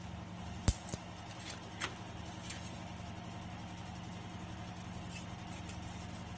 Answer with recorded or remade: recorded